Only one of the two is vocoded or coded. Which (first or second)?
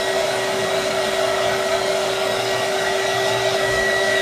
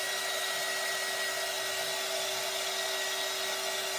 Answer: first